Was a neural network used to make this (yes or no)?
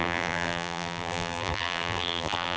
yes